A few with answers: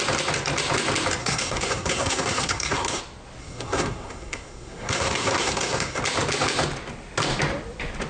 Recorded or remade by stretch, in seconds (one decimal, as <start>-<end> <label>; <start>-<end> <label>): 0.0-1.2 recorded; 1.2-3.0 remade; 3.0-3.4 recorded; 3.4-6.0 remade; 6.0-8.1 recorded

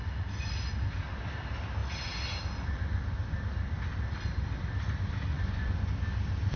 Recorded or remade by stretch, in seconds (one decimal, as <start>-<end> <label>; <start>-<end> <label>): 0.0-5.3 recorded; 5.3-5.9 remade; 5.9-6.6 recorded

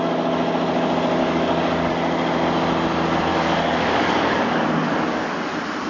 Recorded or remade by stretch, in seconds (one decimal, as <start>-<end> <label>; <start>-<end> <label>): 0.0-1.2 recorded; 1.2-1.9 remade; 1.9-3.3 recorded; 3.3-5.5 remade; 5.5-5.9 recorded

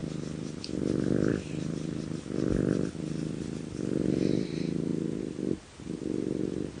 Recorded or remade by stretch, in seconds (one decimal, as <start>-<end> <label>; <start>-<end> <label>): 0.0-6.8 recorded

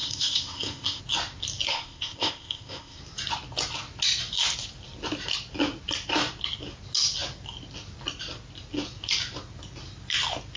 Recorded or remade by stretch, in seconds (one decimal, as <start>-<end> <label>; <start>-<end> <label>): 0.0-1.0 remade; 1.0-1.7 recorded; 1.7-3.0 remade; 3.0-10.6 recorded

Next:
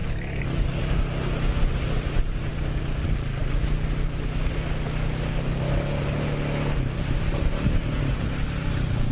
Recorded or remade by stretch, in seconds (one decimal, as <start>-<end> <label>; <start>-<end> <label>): 0.0-0.8 remade; 0.8-9.1 recorded

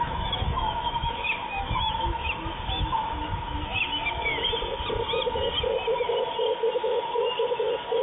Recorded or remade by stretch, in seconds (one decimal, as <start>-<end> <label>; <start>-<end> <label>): 0.0-4.3 remade; 4.3-8.0 recorded

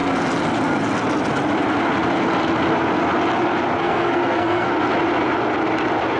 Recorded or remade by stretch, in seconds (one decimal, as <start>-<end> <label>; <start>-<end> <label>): 0.0-3.8 recorded; 3.8-4.7 remade; 4.7-6.2 recorded